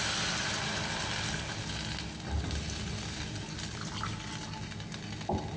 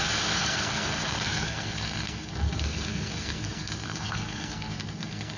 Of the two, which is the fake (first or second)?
second